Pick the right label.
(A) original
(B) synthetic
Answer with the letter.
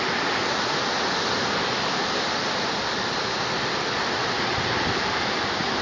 A